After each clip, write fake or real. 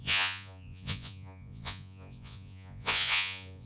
fake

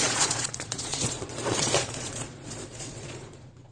fake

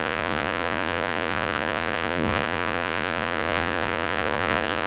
fake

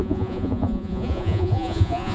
fake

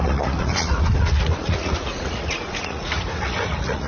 fake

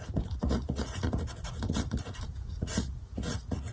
fake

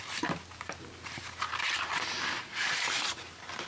real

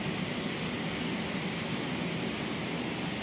real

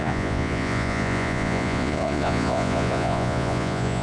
fake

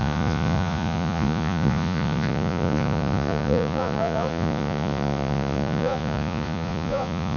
fake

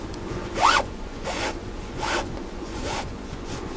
fake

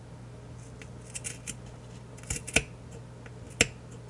real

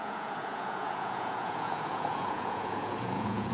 fake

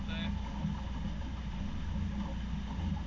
real